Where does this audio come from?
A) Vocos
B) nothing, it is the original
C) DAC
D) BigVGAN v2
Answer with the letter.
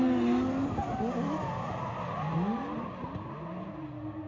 B